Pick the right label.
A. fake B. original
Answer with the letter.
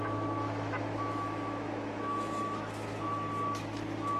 A